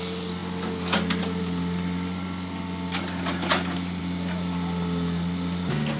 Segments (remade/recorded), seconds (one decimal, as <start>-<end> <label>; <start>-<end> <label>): 0.0-6.0 recorded